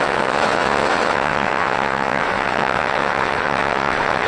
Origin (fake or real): fake